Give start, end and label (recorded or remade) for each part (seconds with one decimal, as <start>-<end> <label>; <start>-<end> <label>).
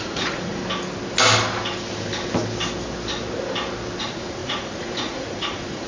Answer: 0.0-0.6 remade; 0.6-4.0 recorded; 4.0-5.9 remade